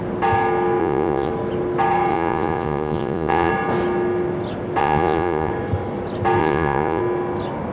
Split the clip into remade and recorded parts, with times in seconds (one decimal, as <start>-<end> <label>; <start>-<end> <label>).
0.0-0.8 recorded; 0.8-1.3 remade; 1.3-2.1 recorded; 2.1-3.5 remade; 3.5-4.8 recorded; 4.8-5.5 remade; 5.5-6.4 recorded; 6.4-7.0 remade; 7.0-7.7 recorded